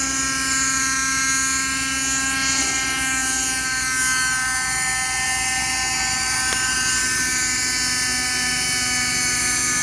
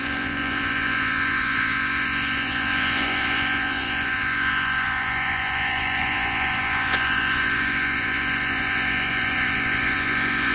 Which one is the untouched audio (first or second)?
first